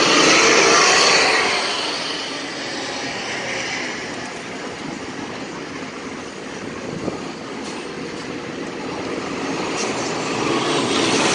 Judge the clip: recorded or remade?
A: recorded